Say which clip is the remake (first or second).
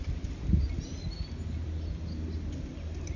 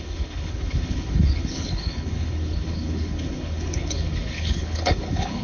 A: second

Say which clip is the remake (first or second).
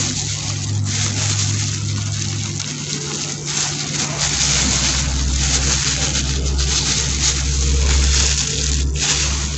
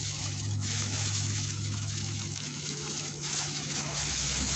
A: second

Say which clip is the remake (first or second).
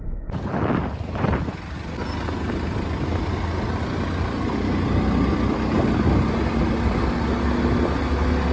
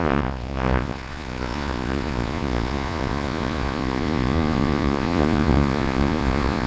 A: second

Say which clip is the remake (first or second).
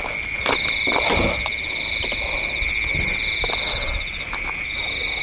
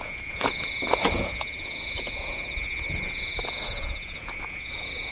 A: second